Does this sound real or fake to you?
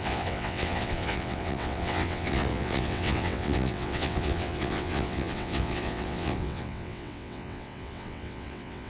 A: fake